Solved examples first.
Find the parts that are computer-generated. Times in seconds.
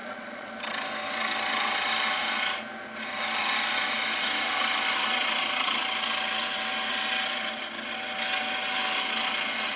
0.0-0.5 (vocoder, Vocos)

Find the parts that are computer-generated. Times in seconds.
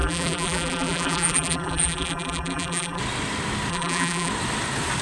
0.0-3.0 (vocoder, BigVGAN v2); 3.7-4.3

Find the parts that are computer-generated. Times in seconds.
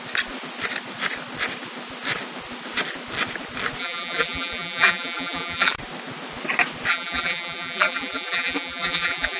3.8-5.7 (vocoder, BigVGAN v2); 6.9-9.4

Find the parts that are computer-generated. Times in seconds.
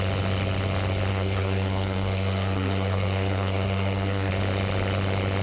1.1-4.3 (codec, SNAC)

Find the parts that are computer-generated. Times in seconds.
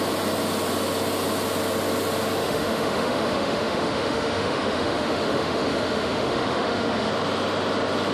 2.4-7.1 (autoencoder, DAC-VAE)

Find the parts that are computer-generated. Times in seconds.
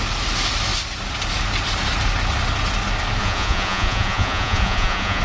3.2-5.2 (vocoder, Vocos)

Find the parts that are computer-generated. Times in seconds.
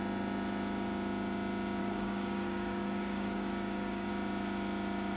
1.8-4.1 (codec, DAC)